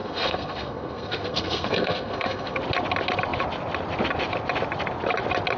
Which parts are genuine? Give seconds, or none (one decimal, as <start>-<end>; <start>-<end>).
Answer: 2.6-5.6